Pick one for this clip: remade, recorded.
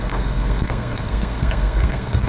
remade